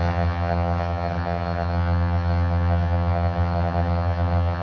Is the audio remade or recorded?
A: remade